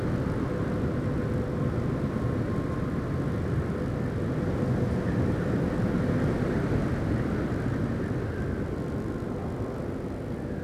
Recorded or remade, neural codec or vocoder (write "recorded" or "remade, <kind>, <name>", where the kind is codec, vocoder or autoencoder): recorded